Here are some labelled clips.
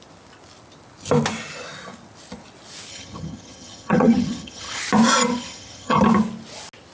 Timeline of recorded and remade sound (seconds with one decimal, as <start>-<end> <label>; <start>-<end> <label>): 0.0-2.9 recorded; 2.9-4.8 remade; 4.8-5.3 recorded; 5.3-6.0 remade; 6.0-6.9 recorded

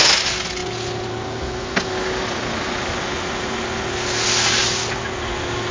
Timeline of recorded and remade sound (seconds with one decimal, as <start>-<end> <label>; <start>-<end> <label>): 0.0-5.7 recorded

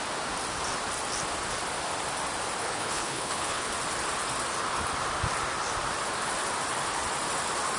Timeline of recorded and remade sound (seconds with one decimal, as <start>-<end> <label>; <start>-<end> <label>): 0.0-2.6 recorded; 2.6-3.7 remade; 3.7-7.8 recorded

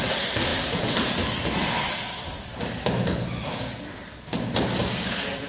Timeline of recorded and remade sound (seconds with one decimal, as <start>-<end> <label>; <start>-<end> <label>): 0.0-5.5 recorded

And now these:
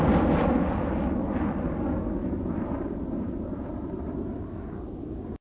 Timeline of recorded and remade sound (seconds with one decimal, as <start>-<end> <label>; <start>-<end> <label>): 0.0-2.2 recorded; 2.2-4.4 remade; 4.4-5.4 recorded

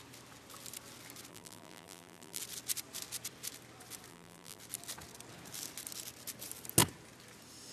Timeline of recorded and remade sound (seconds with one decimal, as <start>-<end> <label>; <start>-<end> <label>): 0.0-1.3 recorded; 1.3-2.4 remade; 2.4-4.1 recorded; 4.1-4.6 remade; 4.6-7.7 recorded

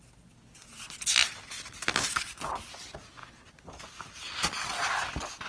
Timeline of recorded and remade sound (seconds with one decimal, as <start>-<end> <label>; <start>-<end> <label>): 0.0-3.2 remade; 3.2-5.5 recorded

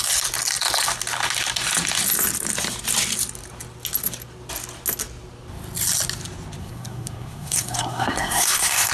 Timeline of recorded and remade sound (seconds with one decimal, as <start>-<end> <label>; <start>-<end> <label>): 0.0-6.6 recorded; 6.6-8.9 remade